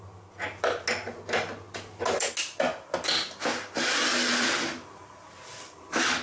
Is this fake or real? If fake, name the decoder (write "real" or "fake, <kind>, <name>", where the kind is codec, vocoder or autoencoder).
real